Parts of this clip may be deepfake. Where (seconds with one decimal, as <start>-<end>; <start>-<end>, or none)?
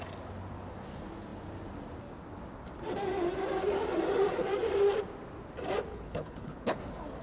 5.9-6.8